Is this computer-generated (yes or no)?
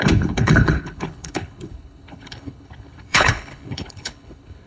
yes